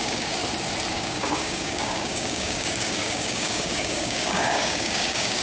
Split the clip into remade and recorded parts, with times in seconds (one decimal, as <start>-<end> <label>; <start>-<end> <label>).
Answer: 0.0-0.4 remade; 0.4-0.9 recorded; 0.9-5.4 remade